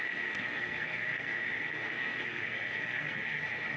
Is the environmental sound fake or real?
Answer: fake